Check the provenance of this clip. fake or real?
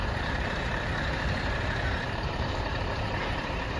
fake